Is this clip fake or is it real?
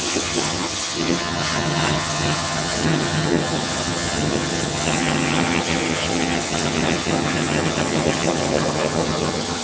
fake